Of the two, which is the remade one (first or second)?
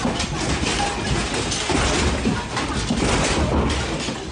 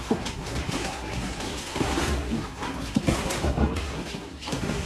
second